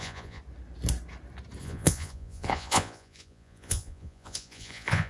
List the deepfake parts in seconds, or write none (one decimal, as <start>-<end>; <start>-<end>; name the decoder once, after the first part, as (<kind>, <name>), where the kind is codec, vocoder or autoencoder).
0.0-0.4 (vocoder, Vocos); 1.6-5.1